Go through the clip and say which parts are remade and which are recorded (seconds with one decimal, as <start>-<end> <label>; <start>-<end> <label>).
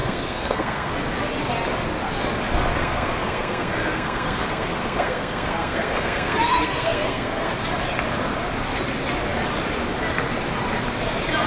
0.0-0.9 remade; 0.9-2.8 recorded; 2.8-7.5 remade; 7.5-11.5 recorded